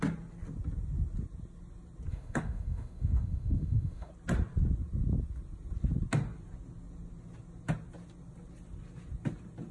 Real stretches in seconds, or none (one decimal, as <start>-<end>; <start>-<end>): 0.0-2.1; 4.1-9.7